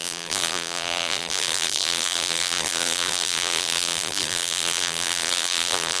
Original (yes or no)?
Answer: no